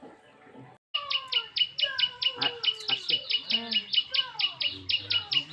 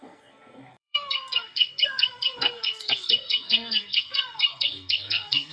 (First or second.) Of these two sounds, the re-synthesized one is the second